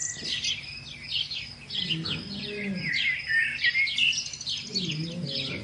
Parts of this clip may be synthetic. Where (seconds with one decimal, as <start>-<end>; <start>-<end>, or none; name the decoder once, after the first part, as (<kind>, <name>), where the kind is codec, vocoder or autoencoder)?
none